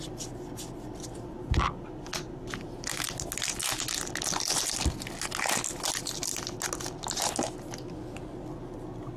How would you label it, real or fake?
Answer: real